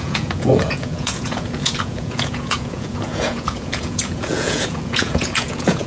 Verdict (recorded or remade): remade